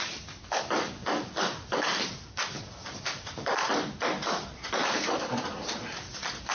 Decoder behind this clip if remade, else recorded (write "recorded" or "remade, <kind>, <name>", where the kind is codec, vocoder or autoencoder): remade, vocoder, BigVGAN v2